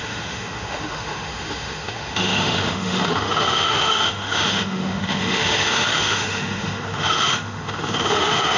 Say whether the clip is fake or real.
fake